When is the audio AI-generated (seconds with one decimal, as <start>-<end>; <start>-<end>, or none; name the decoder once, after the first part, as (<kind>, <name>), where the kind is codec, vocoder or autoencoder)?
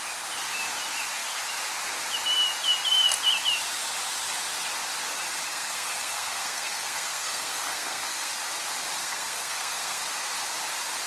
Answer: 5.5-8.3 (codec, SNAC); 9.0-10.0